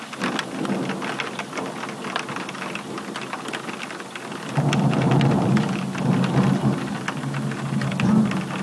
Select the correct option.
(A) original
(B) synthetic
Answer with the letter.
A